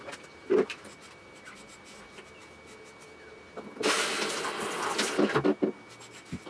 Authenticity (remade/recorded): recorded